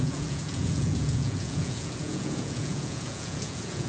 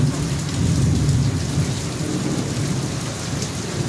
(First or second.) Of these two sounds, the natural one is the second